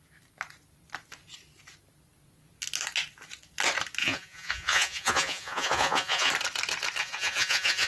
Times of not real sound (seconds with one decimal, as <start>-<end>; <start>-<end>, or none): 4.0-6.3; 7.0-7.9